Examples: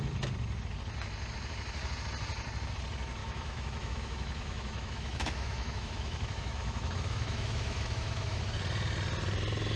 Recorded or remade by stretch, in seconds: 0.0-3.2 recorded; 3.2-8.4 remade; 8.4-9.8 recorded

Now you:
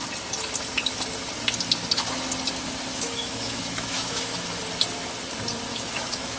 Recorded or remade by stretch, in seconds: 0.0-2.9 recorded; 2.9-4.6 remade; 4.6-5.7 recorded; 5.7-6.4 remade

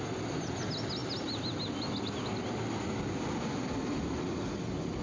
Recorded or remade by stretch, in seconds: 0.0-5.0 recorded